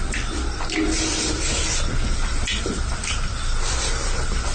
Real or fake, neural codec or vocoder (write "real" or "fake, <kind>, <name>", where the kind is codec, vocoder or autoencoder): real